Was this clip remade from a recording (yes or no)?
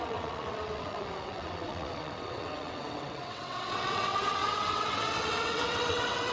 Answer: yes